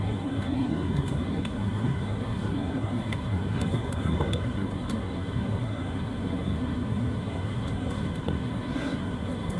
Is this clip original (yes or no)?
no